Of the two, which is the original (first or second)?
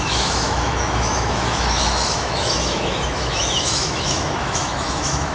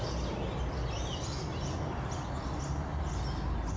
second